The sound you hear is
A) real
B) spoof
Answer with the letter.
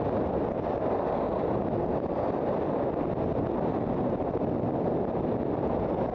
A